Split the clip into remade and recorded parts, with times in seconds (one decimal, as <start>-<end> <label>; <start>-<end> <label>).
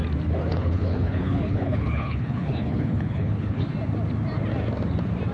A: 0.0-0.5 recorded; 0.5-3.7 remade; 3.7-5.3 recorded